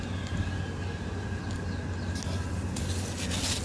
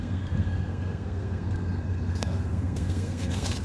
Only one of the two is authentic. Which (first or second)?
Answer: first